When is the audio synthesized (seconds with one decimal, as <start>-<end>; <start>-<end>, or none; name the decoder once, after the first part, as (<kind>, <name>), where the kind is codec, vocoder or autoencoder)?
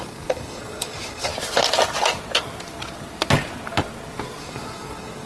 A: 0.0-1.3 (codec, DAC); 4.4-5.3